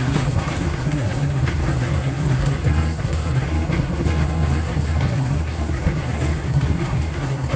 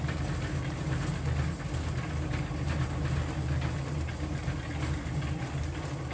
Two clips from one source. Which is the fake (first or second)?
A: first